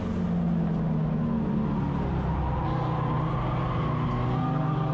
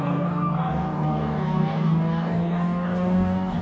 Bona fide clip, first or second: first